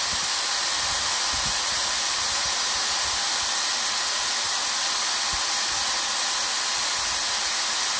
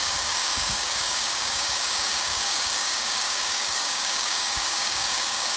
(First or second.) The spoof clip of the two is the second